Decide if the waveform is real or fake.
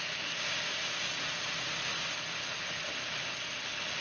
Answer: real